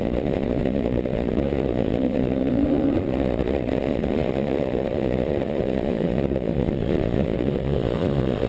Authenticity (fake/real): fake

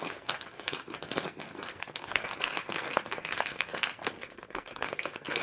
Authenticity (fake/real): fake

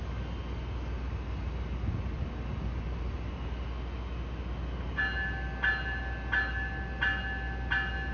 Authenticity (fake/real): real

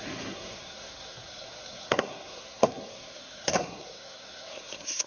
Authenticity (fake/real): fake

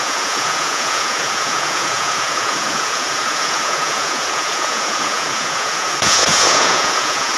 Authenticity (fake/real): fake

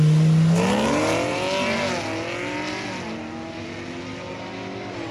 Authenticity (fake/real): real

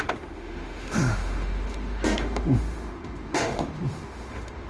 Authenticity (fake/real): fake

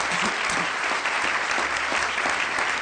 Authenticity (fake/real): real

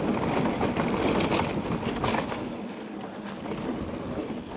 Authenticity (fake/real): real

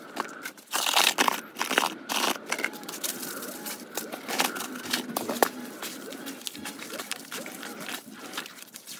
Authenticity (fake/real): fake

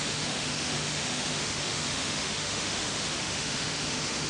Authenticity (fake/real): fake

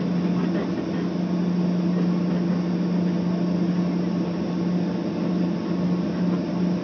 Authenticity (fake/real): real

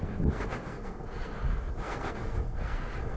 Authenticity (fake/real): fake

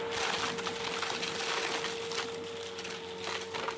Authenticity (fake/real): real